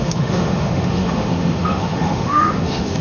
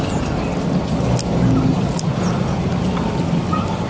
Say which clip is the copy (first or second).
first